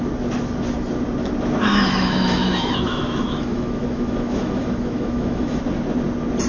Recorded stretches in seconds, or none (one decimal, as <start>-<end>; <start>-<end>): 0.0-1.7; 5.6-6.5